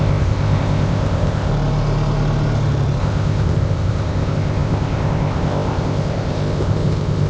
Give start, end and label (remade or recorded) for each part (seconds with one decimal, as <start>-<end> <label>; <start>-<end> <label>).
0.0-1.5 remade; 1.5-3.0 recorded; 3.0-7.3 remade